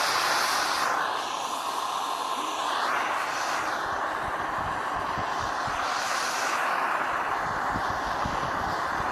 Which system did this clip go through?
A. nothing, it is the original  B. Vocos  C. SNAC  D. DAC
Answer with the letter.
A